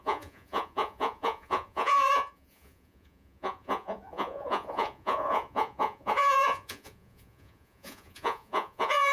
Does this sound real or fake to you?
fake